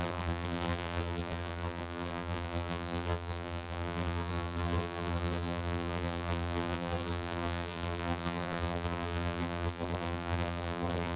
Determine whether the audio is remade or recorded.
remade